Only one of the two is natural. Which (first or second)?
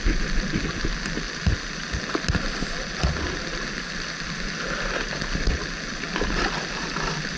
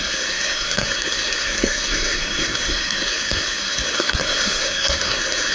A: first